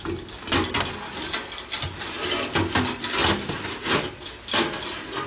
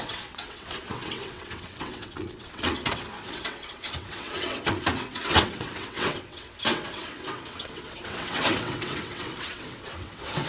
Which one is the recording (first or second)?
first